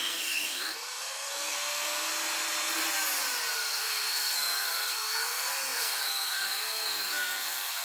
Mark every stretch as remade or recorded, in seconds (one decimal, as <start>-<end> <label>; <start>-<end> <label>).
0.0-2.1 remade; 2.1-3.5 recorded; 3.5-7.8 remade

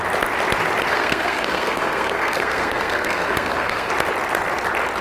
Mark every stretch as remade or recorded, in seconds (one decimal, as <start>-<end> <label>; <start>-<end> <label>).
0.0-0.9 recorded; 0.9-3.9 remade; 3.9-5.0 recorded

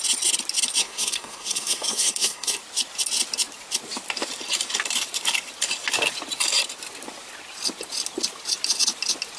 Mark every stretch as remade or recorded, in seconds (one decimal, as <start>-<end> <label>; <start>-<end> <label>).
0.0-0.8 recorded; 0.8-2.6 remade; 2.6-9.4 recorded

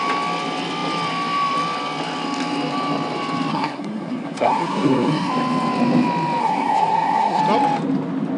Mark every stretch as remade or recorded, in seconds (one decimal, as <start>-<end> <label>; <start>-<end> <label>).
0.0-3.5 recorded; 3.5-5.3 remade; 5.3-6.4 recorded; 6.4-7.4 remade; 7.4-8.4 recorded

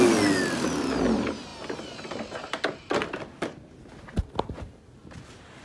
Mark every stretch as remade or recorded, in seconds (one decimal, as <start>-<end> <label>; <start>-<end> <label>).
0.0-5.6 recorded

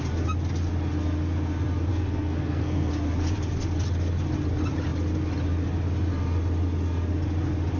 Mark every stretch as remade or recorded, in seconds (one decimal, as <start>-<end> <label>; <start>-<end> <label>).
0.0-1.9 recorded; 1.9-2.9 remade; 2.9-7.8 recorded

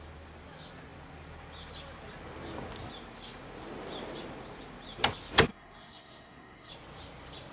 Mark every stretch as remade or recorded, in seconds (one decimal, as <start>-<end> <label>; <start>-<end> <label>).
0.0-5.5 recorded; 5.5-6.7 remade; 6.7-7.5 recorded

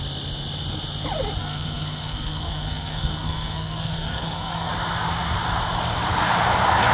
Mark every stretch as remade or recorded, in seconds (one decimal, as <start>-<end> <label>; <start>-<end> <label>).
0.0-1.4 recorded; 1.4-4.7 remade; 4.7-6.9 recorded